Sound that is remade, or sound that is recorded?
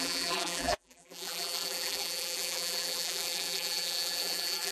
remade